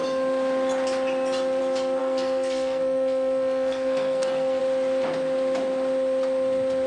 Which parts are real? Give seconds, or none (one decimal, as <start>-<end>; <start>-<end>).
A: 0.0-2.0; 4.6-6.9